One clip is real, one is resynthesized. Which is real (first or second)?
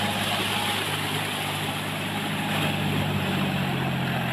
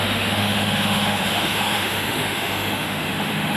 first